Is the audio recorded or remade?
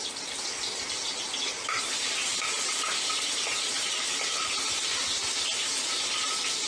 recorded